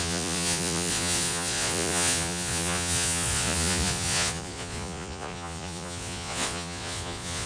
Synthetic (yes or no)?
yes